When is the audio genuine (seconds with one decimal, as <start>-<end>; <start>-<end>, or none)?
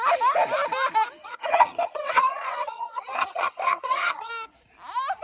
0.0-1.2; 4.3-5.2